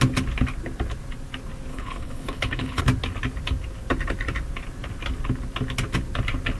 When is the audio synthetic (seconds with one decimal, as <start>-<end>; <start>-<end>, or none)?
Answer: 1.7-2.8